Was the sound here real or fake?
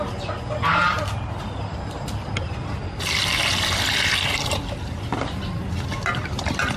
real